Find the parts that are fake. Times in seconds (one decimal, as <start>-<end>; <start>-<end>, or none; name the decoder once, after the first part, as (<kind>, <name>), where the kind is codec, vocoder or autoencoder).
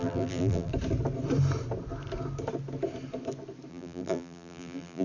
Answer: 0.0-0.7 (vocoder, BigVGAN v2); 3.7-5.0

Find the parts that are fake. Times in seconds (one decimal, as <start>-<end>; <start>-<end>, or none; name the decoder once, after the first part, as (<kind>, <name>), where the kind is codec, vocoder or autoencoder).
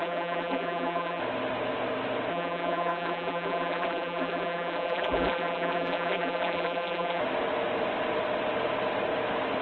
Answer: 0.0-1.2 (vocoder, BigVGAN v2); 2.3-7.2